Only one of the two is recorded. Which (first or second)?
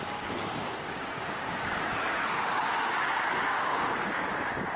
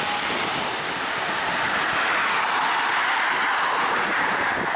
second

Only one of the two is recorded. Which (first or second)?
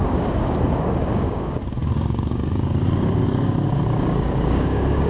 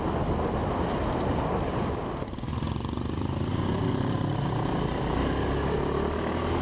second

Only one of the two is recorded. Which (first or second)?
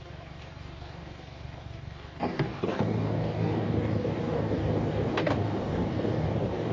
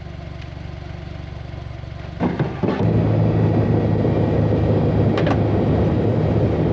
second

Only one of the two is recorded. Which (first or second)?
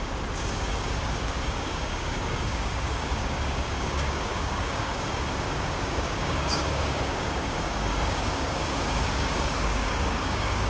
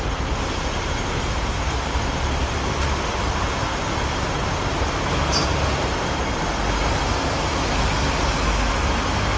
second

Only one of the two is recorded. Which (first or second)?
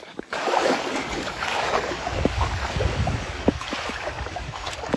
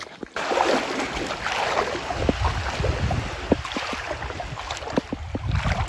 second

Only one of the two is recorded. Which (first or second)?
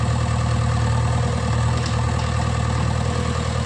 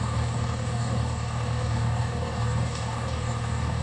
first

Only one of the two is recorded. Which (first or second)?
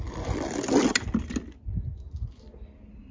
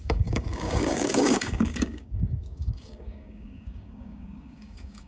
first